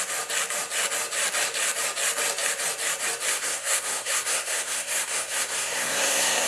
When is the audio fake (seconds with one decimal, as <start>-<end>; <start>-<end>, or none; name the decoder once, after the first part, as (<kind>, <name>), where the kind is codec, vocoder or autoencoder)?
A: 3.3-6.5 (codec, SNAC)